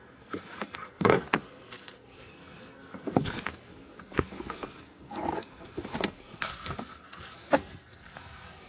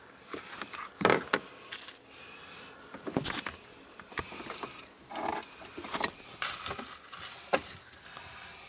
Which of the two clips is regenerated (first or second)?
first